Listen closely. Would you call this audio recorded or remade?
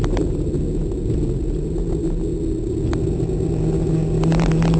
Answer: recorded